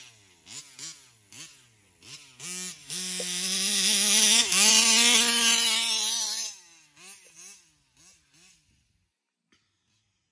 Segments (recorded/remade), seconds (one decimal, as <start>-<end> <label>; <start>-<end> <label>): 0.0-2.8 recorded; 2.8-4.7 remade; 4.7-10.3 recorded